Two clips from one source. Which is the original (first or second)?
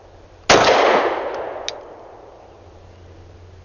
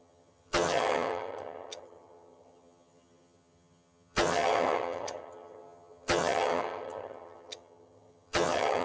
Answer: first